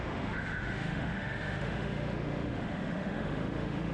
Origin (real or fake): fake